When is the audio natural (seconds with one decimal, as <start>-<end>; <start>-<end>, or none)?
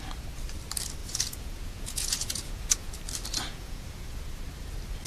0.0-1.0; 2.9-3.5; 4.2-5.1